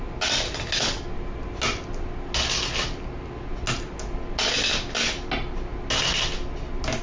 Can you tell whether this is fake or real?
real